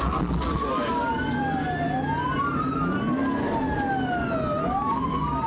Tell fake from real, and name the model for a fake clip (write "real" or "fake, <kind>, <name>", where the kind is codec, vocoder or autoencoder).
real